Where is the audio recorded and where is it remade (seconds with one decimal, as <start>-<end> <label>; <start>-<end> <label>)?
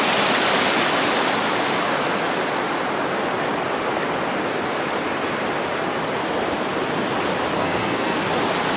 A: 0.0-7.6 recorded; 7.6-8.2 remade; 8.2-8.8 recorded